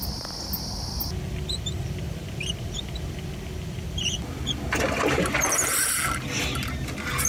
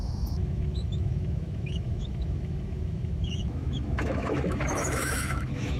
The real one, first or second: first